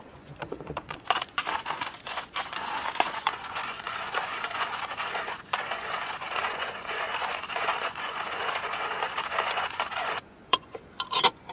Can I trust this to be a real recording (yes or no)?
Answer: no